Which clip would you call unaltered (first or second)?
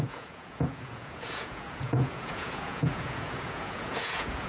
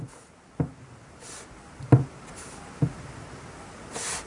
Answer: second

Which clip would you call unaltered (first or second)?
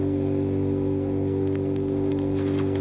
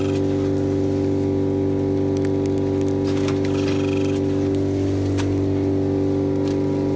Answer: second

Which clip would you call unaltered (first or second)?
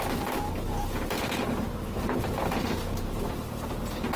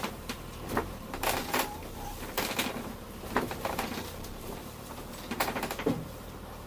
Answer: first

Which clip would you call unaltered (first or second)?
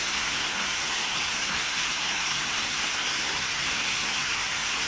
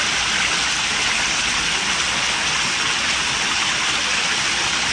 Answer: second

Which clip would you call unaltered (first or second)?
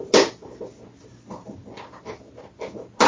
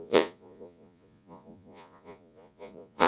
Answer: first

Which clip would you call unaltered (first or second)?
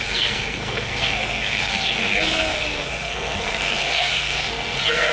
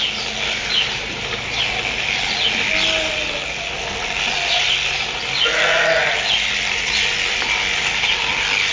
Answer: second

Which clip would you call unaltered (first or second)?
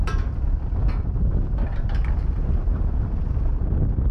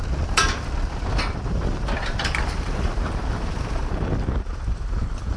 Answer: first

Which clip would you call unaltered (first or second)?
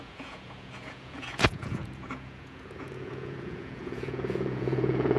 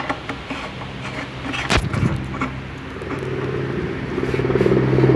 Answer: second